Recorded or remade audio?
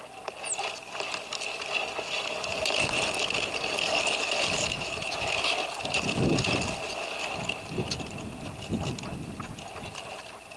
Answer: recorded